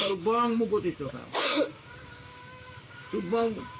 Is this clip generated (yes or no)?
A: yes